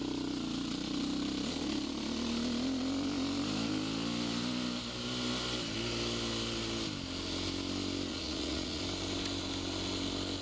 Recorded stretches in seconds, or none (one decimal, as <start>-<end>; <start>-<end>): 0.0-8.1; 8.8-10.4